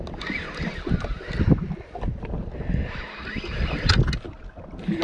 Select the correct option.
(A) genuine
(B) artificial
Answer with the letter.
A